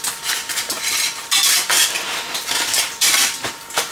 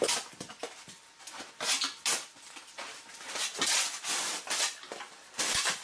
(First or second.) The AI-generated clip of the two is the first